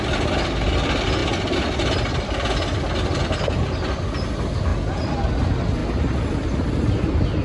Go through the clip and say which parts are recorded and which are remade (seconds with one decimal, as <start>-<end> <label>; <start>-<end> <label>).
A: 0.0-7.4 recorded